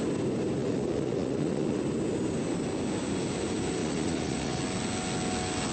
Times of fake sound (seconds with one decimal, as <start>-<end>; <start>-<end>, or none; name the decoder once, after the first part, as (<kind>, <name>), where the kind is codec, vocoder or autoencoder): 0.6-1.8 (vocoder, Vocos); 3.8-4.6

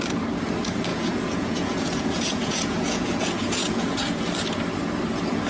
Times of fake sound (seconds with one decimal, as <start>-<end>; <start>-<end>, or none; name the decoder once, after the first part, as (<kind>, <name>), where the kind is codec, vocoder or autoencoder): 0.9-4.2 (vocoder, Vocos)

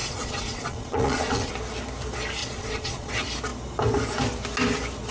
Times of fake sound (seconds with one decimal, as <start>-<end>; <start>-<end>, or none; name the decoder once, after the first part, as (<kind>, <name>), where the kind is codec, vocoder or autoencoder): 0.0-1.5 (vocoder, Vocos); 2.4-3.1